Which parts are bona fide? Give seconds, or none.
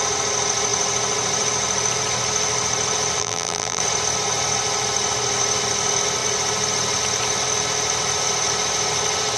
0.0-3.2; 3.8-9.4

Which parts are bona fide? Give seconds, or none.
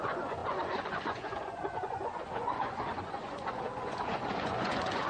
none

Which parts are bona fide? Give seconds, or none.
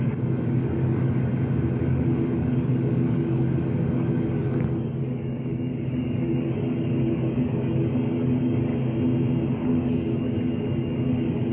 1.3-1.8; 8.7-9.5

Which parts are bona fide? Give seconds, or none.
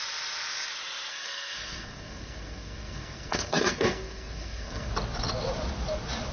0.0-1.1; 4.9-6.3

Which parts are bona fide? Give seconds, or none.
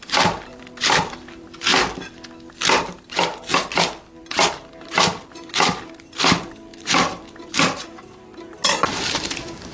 1.7-2.7; 3.3-4.2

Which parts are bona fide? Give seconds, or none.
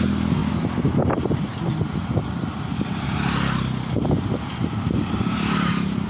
0.4-0.9; 1.5-2.4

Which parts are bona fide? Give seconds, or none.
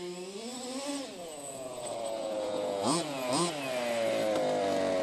0.0-1.2; 3.5-5.0